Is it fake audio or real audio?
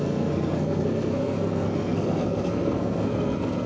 fake